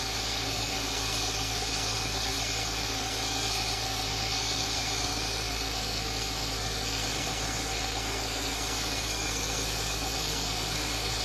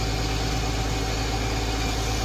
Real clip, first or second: second